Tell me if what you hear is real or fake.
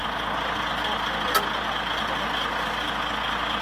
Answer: real